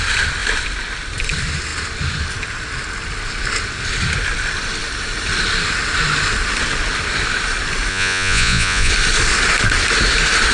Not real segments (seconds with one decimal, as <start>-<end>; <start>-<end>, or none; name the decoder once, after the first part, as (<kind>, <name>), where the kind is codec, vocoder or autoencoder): 7.9-8.9 (vocoder, Vocos)

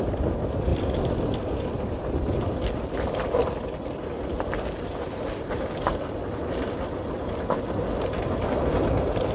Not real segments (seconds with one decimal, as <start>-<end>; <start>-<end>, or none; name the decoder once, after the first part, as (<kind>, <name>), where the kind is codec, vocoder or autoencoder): 0.7-3.2 (vocoder, BigVGAN v2)